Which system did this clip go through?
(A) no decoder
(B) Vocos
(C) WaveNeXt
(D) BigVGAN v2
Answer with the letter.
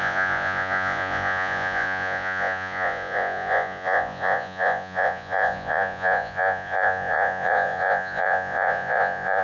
B